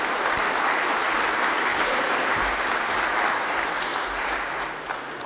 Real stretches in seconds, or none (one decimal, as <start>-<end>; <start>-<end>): 0.0-1.7; 2.4-3.9; 4.8-5.3